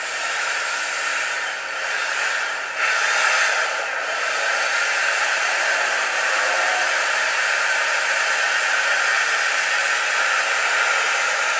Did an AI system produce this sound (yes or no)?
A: yes